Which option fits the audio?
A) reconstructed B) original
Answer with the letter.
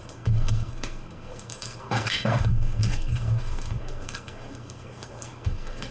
A